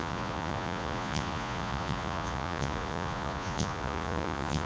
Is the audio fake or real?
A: fake